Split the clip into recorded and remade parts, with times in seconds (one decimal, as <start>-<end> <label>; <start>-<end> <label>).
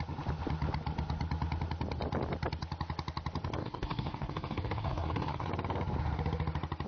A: 0.0-3.6 recorded; 3.6-5.5 remade; 5.5-6.9 recorded